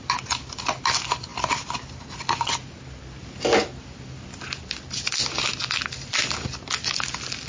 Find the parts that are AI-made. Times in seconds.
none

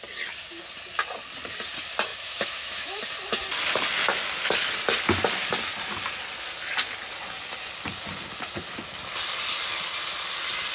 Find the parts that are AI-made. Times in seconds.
2.1-3.0 (autoencoder, DAC-VAE)

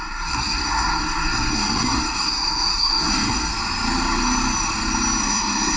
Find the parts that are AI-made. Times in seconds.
0.0-3.5 (codec, SNAC); 5.2-5.8

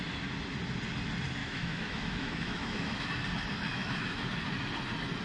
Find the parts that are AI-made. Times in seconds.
1.4-3.1 (autoencoder, DAC-VAE); 3.7-4.3

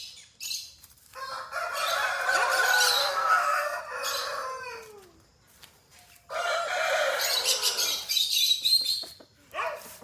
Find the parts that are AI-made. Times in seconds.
3.0-3.8 (codec, SNAC)